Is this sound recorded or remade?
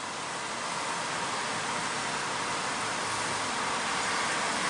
recorded